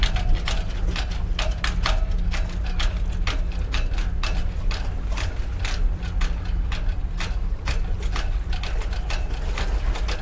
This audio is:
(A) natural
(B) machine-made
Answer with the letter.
A